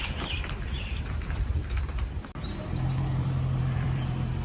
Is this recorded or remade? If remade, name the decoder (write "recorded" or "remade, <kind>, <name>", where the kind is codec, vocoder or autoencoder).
remade, vocoder, BigVGAN v2